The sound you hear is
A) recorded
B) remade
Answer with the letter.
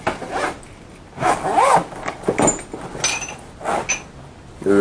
A